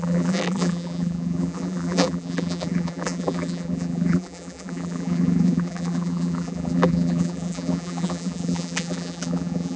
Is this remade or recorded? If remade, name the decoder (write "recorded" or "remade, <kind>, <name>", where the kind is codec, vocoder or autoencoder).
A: remade, vocoder, BigVGAN v2